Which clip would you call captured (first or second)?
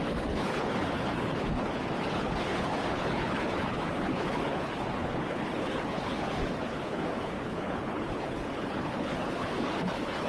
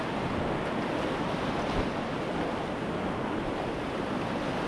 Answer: second